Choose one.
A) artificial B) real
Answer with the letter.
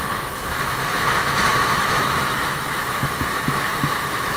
A